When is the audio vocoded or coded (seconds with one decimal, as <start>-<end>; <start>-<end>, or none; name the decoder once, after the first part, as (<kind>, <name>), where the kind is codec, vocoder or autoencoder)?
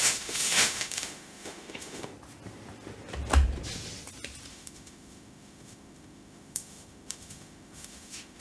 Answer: 0.0-2.1 (autoencoder, DAC-VAE); 4.5-8.4